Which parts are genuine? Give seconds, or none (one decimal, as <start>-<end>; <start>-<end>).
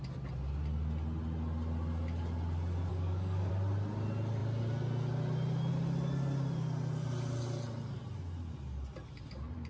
0.0-2.9; 3.5-9.7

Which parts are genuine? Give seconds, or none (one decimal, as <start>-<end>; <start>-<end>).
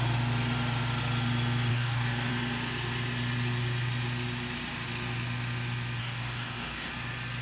0.0-1.7; 2.3-6.0; 6.9-7.4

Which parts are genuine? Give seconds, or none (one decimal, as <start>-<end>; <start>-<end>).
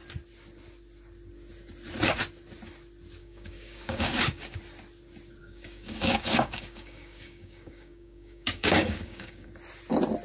0.0-3.2; 4.6-5.4; 9.5-10.2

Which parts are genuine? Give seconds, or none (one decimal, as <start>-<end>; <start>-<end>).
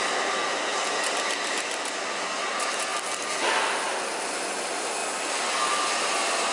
0.0-6.5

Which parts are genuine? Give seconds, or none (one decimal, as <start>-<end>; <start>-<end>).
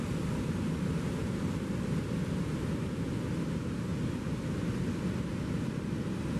0.0-6.4